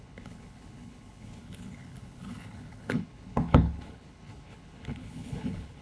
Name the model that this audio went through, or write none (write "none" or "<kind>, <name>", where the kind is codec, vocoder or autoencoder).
codec, HILCodec